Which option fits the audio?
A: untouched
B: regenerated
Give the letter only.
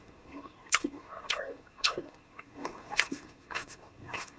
B